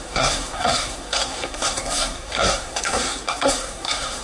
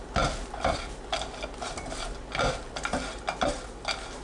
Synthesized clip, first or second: first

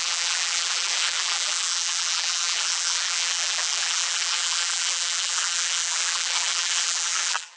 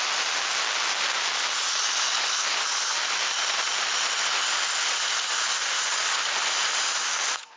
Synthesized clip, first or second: first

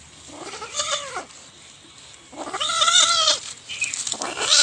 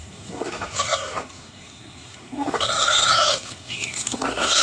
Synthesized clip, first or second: second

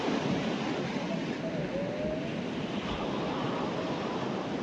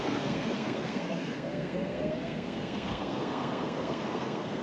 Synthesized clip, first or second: second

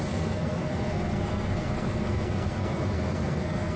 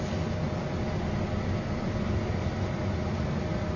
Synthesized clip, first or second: first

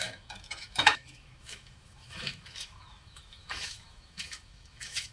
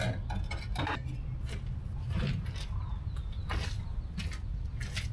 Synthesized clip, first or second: first